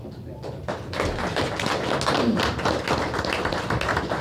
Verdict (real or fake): real